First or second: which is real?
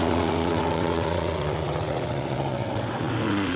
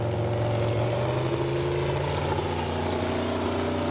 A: second